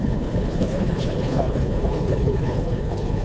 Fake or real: fake